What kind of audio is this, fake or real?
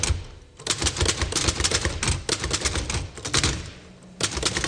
real